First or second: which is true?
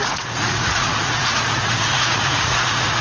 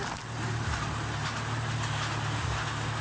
second